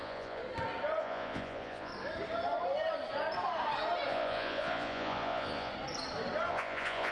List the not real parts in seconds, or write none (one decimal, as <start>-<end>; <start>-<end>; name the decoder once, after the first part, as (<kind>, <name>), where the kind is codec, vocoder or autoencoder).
0.0-0.4 (vocoder, Vocos); 1.0-1.9; 4.1-5.7; 6.5-7.1